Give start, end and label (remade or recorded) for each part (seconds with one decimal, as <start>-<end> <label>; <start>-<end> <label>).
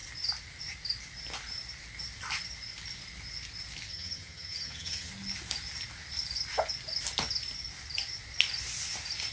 0.0-3.9 recorded; 3.9-5.1 remade; 5.1-9.3 recorded